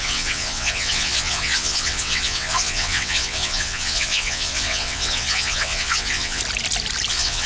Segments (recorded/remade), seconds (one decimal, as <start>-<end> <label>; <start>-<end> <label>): 0.0-6.4 remade; 6.4-7.1 recorded; 7.1-7.5 remade